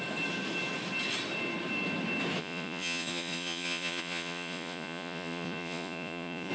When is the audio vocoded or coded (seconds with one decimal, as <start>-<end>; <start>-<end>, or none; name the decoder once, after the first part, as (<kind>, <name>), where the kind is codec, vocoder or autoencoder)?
2.4-6.5 (vocoder, Vocos)